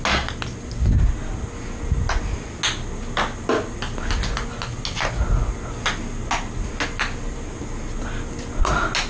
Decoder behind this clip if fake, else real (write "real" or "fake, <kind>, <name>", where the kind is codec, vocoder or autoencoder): real